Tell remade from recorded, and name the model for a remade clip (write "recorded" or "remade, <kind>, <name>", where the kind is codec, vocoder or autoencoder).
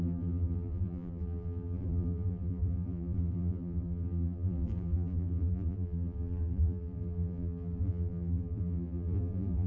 remade, vocoder, BigVGAN v2